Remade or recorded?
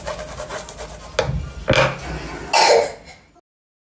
recorded